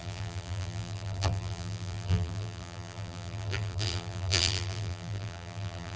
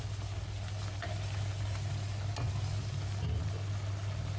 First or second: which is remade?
first